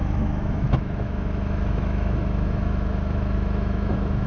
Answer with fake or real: fake